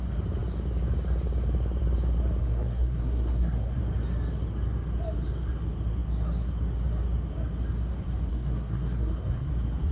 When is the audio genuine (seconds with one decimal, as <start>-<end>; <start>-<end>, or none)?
0.0-2.4; 3.8-8.3; 9.5-9.9